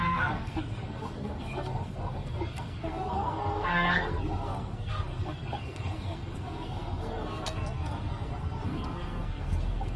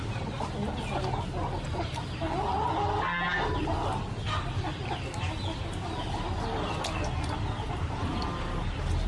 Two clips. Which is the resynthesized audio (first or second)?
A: first